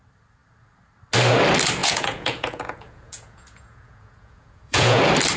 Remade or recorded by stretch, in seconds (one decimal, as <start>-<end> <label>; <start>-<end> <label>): 0.0-1.8 recorded; 1.8-5.0 remade; 5.0-5.4 recorded